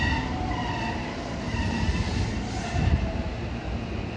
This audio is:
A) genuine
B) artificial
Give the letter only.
B